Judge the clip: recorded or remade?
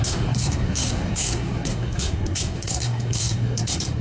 remade